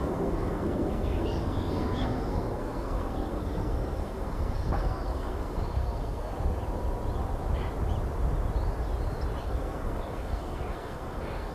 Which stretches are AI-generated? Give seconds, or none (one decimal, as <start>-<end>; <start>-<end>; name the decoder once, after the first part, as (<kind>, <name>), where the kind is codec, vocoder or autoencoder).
0.0-6.3 (codec, SNAC); 9.4-11.5